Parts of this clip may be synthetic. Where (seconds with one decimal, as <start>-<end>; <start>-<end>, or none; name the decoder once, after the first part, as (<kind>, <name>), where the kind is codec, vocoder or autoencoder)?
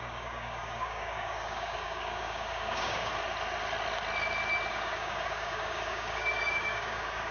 0.0-3.1 (codec, DAC); 4.7-7.3